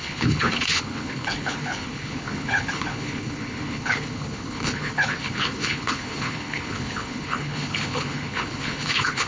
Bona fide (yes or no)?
no